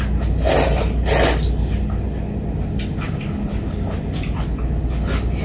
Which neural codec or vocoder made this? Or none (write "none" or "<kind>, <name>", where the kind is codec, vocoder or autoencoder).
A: none